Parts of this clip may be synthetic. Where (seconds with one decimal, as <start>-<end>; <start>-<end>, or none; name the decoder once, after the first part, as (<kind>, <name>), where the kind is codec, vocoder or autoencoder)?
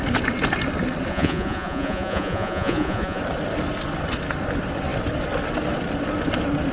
1.1-3.2 (vocoder, Vocos)